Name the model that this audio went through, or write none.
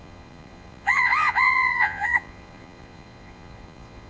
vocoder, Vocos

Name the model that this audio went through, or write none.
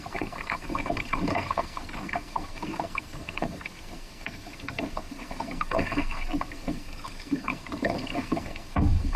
codec, SNAC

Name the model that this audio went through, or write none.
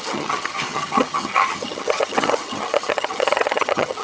vocoder, HiFi-GAN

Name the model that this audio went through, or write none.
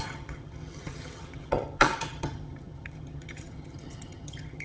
vocoder, HiFi-GAN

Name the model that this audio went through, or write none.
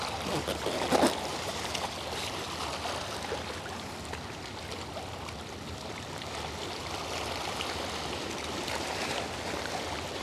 none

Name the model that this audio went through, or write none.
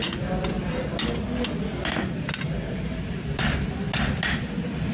none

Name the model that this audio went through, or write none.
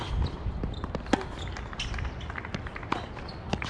none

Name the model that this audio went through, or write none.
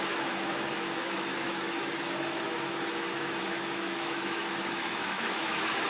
autoencoder, DAC-VAE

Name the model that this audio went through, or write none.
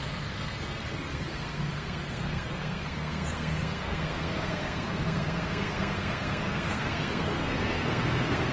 codec, SNAC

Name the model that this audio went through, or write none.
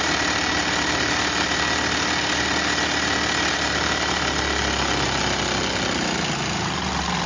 none